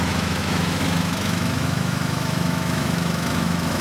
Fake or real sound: fake